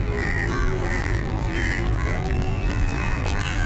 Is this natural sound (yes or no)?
no